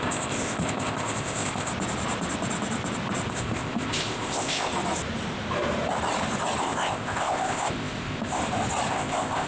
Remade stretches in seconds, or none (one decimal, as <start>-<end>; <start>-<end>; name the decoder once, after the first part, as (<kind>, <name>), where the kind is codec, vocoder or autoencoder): 0.0-1.7 (codec, ZipCodec); 3.3-4.7; 6.6-8.4; 8.9-9.5